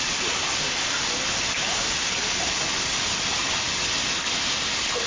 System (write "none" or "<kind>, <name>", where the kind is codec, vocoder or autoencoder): none